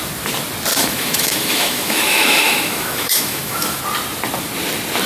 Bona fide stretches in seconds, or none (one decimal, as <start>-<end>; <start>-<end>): 0.0-0.7; 3.8-5.1